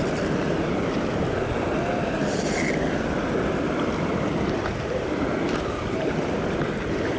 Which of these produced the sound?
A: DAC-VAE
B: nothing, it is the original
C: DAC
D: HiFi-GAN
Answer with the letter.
B